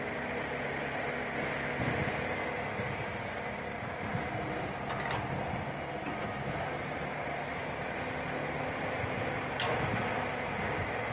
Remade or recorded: recorded